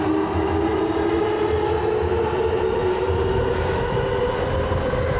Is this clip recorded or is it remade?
recorded